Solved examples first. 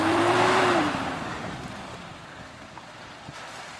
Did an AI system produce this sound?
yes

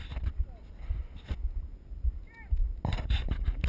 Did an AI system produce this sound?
no